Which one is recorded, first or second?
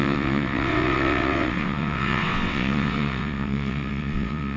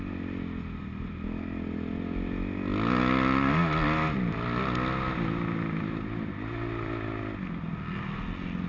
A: second